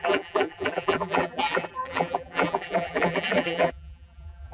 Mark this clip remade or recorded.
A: remade